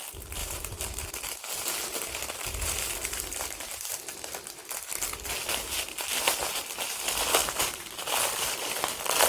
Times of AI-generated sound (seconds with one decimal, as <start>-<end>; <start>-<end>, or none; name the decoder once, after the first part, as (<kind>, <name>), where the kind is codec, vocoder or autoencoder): 0.4-1.1 (vocoder, BigVGAN v2); 3.3-3.9